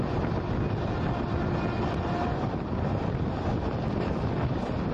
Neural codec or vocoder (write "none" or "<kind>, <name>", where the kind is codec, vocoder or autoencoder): none